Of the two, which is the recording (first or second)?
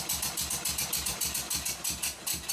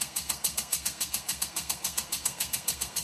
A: first